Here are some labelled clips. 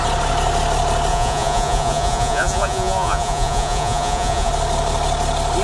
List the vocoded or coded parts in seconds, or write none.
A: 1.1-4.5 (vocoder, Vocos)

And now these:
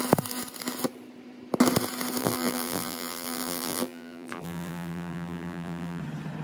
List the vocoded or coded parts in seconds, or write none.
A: 2.2-6.0 (vocoder, BigVGAN v2)